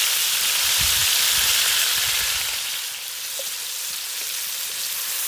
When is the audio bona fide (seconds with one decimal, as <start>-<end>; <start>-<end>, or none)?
1.0-4.2